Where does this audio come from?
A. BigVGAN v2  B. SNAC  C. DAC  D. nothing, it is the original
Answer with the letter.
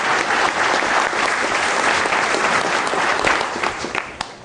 D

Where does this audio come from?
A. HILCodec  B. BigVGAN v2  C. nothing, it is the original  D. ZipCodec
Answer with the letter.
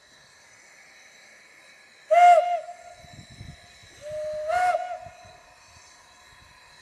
C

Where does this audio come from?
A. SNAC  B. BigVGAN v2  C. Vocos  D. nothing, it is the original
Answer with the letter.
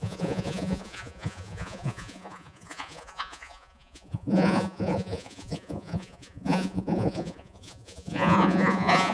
C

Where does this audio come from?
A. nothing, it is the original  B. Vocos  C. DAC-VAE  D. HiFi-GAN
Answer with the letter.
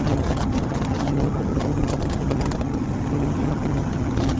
D